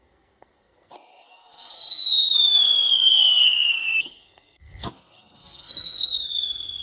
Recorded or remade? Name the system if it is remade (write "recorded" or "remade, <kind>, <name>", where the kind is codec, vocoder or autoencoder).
remade, codec, SNAC